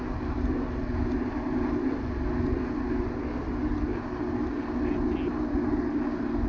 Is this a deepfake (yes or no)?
no